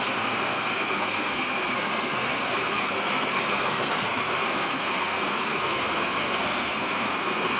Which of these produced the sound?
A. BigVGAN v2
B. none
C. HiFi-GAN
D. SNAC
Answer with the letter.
D